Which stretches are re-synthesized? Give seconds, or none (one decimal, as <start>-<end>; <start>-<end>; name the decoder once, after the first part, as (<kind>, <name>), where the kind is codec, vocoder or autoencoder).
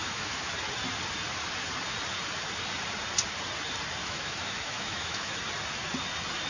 0.0-0.5 (autoencoder, DAC-VAE); 4.0-5.4